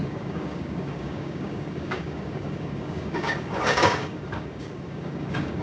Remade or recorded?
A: remade